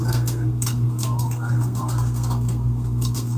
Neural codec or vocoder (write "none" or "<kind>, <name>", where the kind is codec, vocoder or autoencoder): codec, SNAC